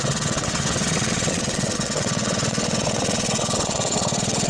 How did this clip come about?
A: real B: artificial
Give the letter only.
B